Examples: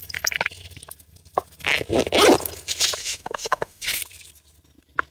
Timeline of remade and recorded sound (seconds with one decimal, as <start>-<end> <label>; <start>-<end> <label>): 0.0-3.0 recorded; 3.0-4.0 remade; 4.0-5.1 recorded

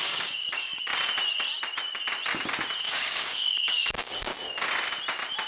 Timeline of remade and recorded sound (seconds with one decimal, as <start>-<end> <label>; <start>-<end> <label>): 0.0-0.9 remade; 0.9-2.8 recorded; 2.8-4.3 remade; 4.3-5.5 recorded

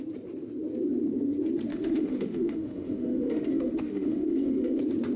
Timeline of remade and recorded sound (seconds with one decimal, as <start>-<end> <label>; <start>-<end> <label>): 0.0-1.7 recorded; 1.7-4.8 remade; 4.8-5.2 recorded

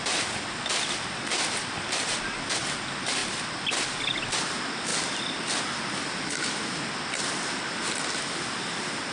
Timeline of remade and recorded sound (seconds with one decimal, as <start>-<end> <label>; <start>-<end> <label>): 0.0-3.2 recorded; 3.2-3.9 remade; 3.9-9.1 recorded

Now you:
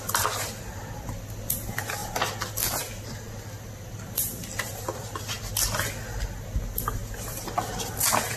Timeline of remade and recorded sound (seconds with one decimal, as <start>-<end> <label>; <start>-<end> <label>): 0.0-8.4 recorded